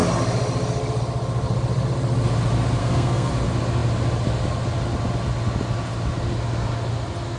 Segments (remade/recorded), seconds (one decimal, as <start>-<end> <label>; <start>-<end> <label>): 0.0-2.8 recorded; 2.8-3.3 remade; 3.3-7.4 recorded